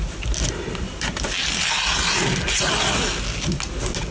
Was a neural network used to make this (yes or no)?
no